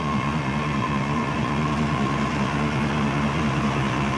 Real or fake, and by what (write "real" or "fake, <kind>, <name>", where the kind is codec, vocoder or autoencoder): fake, vocoder, Vocos